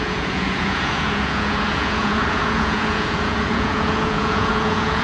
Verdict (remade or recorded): remade